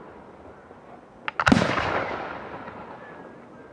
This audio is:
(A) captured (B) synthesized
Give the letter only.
A